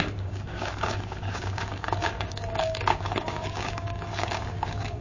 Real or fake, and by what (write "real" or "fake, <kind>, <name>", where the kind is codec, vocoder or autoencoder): fake, codec, DAC